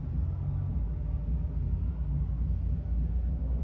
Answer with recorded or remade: recorded